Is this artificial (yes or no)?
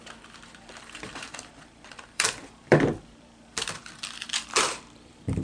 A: yes